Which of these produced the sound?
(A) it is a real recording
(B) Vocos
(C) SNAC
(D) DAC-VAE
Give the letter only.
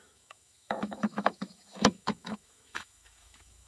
D